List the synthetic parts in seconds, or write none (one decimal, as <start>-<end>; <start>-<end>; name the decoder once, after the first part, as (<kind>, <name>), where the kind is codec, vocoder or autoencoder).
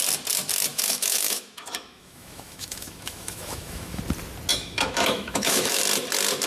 0.7-4.0 (autoencoder, DAC-VAE); 4.5-5.8